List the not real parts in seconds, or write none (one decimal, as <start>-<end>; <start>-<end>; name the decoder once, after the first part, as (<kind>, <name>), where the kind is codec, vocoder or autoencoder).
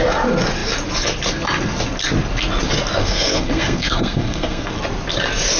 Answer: 3.0-4.7 (codec, SNAC)